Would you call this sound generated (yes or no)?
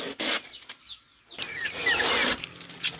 no